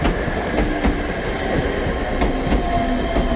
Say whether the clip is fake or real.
real